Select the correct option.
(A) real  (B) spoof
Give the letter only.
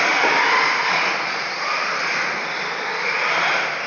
A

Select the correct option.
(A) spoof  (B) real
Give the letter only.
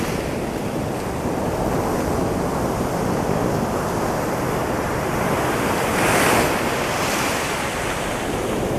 B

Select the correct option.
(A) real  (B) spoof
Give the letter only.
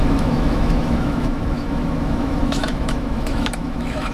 B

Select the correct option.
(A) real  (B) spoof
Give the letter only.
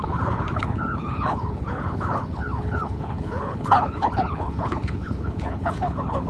B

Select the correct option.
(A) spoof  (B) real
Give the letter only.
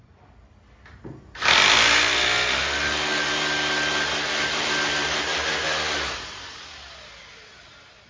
B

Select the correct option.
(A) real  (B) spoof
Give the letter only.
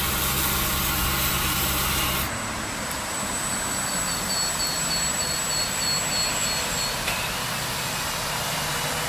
A